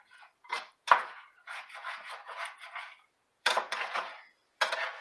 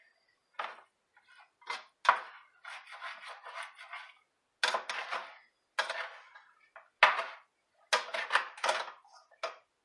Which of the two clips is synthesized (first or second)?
first